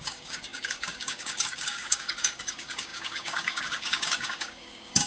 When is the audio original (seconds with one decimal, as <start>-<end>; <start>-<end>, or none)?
none